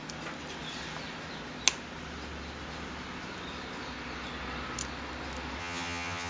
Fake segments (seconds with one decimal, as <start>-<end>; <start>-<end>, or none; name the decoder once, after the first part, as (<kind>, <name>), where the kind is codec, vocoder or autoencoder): 5.6-6.3 (vocoder, HiFi-GAN)